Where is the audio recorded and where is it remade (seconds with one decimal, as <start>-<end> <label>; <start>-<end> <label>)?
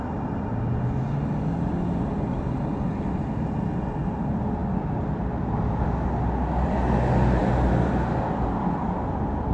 0.0-9.5 recorded